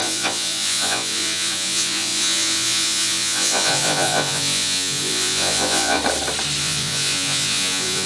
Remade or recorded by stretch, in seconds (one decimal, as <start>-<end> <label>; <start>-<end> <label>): 0.0-6.0 remade; 6.0-6.6 recorded; 6.6-8.1 remade